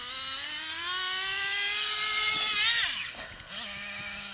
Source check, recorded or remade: recorded